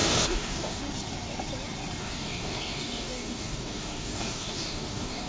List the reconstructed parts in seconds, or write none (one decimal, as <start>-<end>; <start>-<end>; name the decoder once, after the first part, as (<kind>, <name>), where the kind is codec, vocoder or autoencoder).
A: 0.0-0.8 (codec, DAC); 2.0-5.3